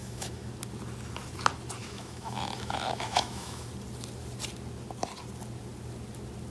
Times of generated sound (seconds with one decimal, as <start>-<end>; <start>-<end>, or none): 0.0-0.5; 1.8-3.7